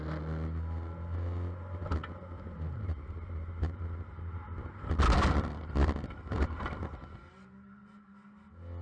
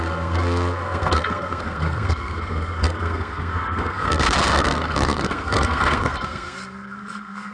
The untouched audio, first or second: first